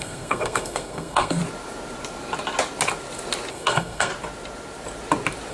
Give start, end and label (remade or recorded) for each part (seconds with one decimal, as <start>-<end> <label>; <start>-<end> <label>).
0.0-1.4 remade; 1.4-3.5 recorded; 3.5-4.1 remade; 4.1-5.5 recorded